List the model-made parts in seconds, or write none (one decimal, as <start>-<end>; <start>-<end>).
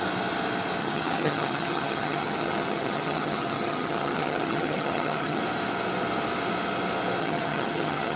0.8-5.4; 7.2-8.2